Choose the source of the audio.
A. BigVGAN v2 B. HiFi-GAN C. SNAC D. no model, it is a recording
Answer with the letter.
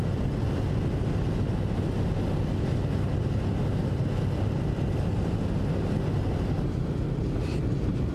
D